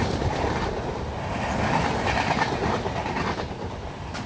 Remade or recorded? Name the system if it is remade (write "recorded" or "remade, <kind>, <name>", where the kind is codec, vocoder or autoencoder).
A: recorded